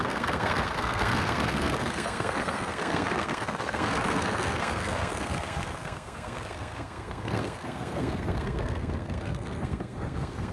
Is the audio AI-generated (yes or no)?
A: yes